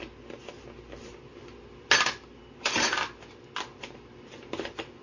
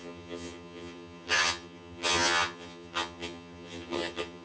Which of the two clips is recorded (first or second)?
first